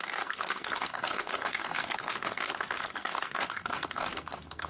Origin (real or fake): fake